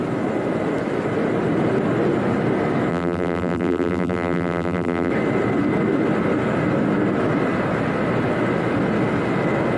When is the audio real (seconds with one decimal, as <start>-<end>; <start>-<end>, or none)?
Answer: 0.0-2.9; 5.1-9.8